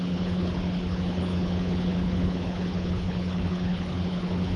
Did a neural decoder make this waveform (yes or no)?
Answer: yes